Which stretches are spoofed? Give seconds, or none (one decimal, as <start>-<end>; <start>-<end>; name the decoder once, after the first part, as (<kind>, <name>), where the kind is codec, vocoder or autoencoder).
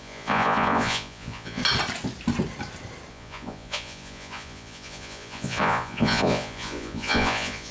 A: 0.0-1.6 (vocoder, Vocos); 3.1-7.7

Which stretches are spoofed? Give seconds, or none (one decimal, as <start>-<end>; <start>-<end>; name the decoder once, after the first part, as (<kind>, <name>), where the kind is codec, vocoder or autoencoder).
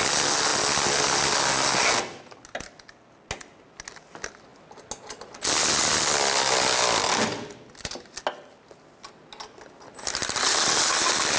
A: none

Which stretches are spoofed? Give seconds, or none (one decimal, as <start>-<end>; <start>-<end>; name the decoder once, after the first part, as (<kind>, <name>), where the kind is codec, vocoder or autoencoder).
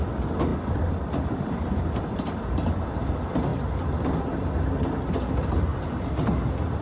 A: none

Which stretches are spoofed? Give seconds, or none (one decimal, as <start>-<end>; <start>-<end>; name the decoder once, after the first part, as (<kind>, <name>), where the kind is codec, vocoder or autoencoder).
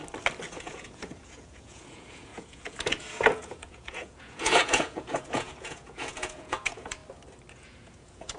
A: 0.5-7.0 (vocoder, Vocos); 7.5-8.4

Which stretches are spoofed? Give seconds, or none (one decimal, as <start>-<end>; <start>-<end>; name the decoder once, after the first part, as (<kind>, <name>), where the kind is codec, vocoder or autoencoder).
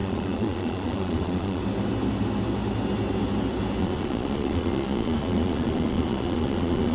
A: 0.0-1.6 (vocoder, Vocos); 3.8-6.9